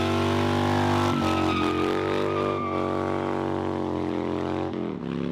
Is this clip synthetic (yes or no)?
no